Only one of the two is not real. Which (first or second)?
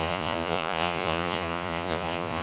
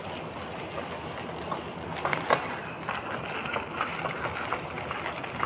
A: first